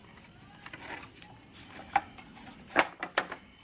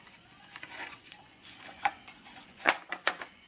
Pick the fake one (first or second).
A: second